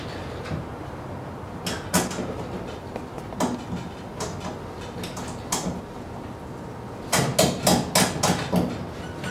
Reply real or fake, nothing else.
real